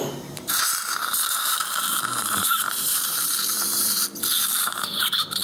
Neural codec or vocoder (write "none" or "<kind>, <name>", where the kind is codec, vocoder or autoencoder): vocoder, BigVGAN v2